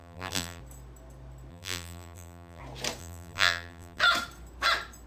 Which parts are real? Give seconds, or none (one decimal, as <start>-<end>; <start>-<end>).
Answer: 0.6-1.5; 2.6-3.0; 4.0-5.1